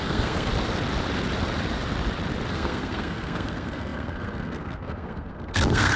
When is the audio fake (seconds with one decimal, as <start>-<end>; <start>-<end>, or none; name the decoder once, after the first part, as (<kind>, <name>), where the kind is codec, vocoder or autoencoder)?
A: 0.0-0.5 (codec, SNAC); 2.5-6.0